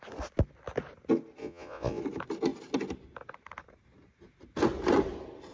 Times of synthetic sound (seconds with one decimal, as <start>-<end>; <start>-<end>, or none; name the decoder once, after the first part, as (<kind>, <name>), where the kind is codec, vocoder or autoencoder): 1.4-2.0 (vocoder, Vocos)